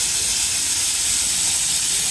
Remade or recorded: recorded